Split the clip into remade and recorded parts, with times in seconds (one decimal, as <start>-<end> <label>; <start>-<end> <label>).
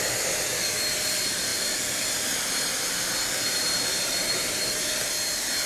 0.0-1.5 recorded; 1.5-2.7 remade; 2.7-3.4 recorded; 3.4-5.1 remade; 5.1-5.7 recorded